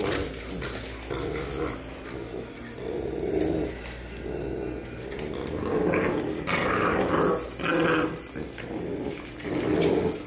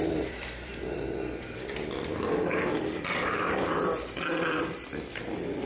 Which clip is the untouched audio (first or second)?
first